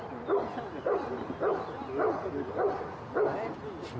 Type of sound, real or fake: real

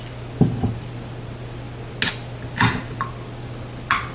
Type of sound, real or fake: real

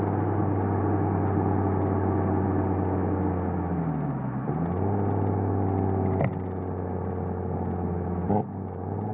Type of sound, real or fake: real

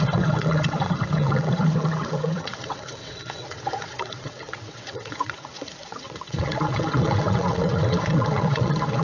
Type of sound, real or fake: fake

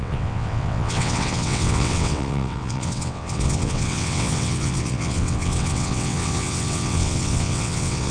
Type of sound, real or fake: fake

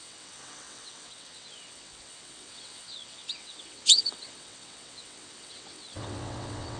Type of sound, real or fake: fake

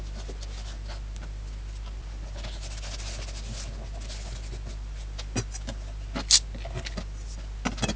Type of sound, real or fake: real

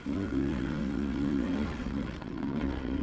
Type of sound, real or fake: fake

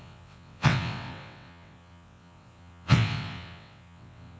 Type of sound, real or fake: fake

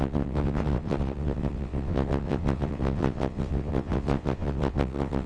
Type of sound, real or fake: fake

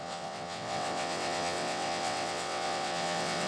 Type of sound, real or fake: fake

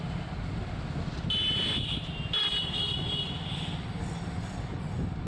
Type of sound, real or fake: real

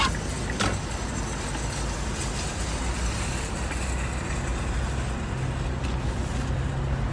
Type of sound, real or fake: real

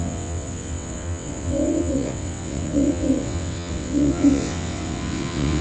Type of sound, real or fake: fake